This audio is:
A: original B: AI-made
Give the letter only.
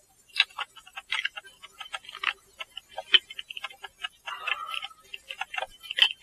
A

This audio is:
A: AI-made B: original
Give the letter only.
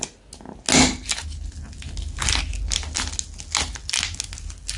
B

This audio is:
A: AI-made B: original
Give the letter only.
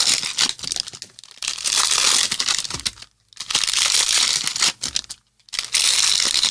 B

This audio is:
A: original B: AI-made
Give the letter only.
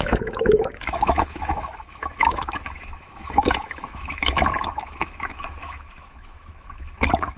B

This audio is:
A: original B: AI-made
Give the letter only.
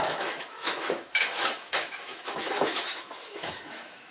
B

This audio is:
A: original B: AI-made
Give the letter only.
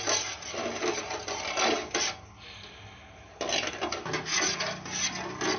A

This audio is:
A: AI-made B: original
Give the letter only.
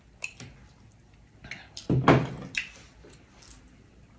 B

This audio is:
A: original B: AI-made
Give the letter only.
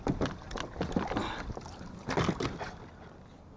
A